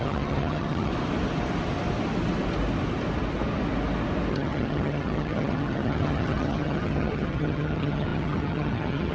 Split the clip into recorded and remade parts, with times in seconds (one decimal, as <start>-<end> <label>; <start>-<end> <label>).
0.0-0.9 remade; 0.9-4.3 recorded; 4.3-9.1 remade